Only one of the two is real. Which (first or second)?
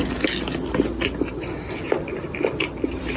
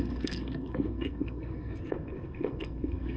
first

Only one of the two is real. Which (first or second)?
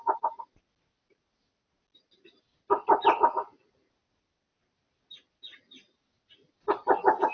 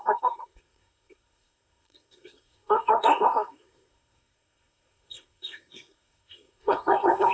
first